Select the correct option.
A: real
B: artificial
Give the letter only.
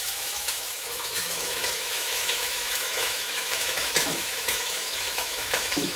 B